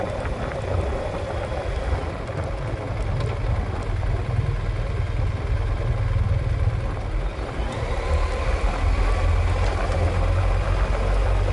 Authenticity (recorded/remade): recorded